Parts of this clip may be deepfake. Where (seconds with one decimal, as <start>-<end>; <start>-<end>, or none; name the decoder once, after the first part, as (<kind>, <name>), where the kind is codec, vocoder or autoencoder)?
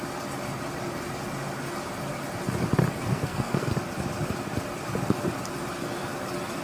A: 3.1-3.7 (codec, SNAC)